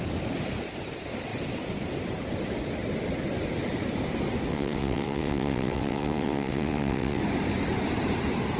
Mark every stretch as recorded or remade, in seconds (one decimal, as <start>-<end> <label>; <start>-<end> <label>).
0.0-4.5 recorded; 4.5-7.2 remade; 7.2-8.6 recorded